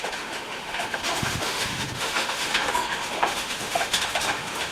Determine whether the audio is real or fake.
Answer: fake